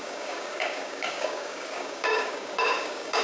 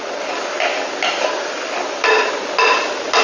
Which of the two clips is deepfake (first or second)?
first